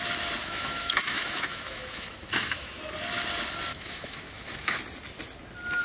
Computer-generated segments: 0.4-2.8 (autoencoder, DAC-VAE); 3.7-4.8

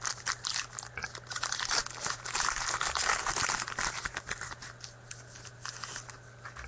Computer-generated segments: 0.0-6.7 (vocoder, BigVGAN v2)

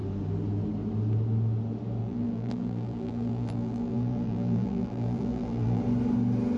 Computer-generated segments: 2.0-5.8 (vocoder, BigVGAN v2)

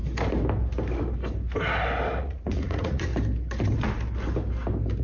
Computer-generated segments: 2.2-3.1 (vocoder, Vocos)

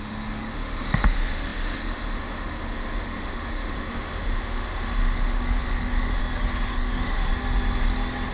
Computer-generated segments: 0.0-6.2 (autoencoder, DAC-VAE); 6.7-7.3